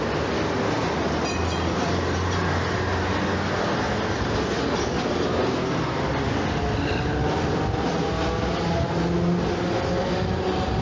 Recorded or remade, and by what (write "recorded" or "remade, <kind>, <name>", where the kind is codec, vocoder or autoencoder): recorded